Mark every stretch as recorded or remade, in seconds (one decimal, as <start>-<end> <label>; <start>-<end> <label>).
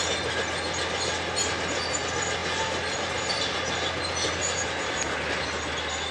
0.0-6.1 recorded